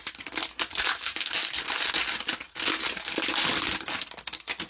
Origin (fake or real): real